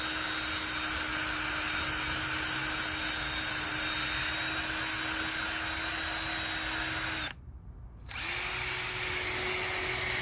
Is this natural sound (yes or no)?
yes